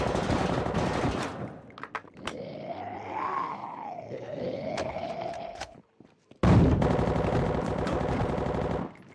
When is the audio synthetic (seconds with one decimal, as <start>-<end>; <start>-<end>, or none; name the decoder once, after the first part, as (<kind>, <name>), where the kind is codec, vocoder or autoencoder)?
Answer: 3.6-5.1 (codec, HILCodec); 5.5-6.0